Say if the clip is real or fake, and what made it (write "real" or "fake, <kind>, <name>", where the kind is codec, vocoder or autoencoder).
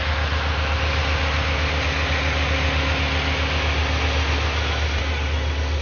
real